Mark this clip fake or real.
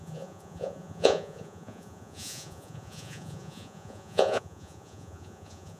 fake